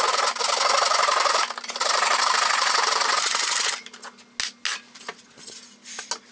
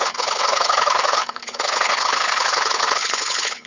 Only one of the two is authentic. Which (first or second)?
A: first